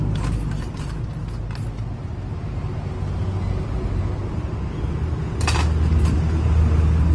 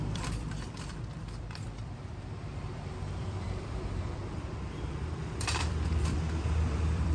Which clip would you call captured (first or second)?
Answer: first